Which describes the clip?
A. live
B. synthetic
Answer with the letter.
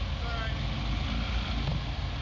A